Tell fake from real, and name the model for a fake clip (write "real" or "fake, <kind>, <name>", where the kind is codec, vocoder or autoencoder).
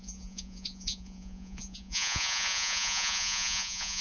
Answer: fake, vocoder, Vocos